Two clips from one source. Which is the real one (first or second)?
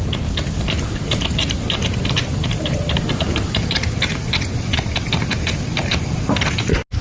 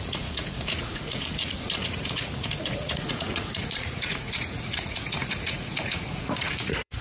first